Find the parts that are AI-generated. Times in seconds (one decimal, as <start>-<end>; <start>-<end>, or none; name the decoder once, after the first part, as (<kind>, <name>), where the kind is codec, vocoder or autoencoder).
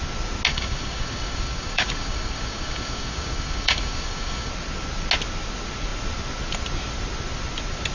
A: 0.5-4.5 (codec, DAC)